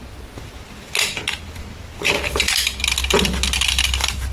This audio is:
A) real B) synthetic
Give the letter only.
A